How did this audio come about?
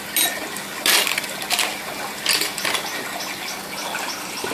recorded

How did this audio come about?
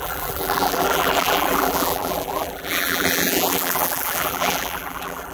remade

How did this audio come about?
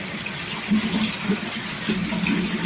recorded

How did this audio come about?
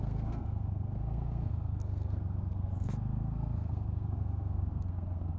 remade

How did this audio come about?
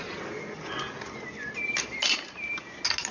recorded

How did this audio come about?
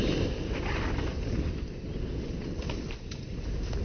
recorded